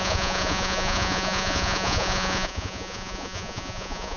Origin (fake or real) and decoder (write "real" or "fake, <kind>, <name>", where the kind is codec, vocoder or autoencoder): fake, vocoder, Vocos